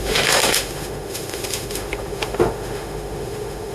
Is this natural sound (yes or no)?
no